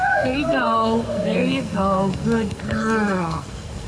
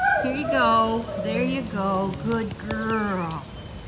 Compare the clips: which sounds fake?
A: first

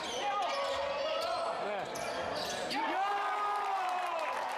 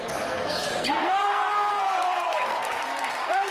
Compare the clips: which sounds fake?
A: second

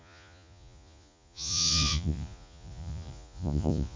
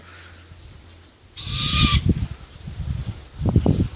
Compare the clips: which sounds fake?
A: first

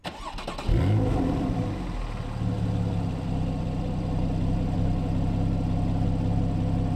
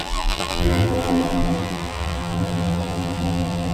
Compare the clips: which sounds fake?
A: second